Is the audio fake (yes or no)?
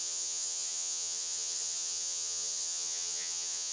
yes